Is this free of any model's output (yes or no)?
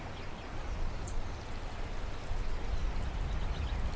yes